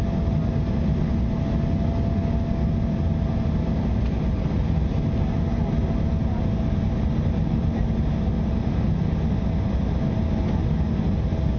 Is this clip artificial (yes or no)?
no